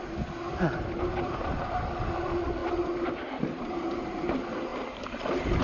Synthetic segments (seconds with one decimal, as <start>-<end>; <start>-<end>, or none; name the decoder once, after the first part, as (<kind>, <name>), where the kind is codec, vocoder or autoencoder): 4.7-5.6 (vocoder, BigVGAN v2)